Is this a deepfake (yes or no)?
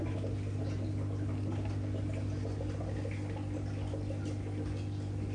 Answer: no